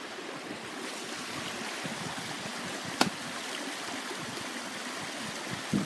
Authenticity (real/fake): real